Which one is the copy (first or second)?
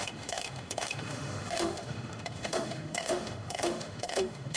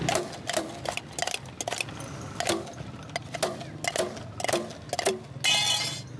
first